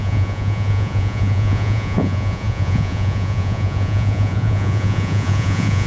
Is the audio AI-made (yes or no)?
yes